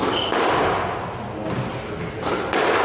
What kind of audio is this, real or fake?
real